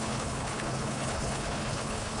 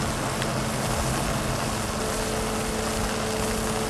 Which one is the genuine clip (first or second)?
second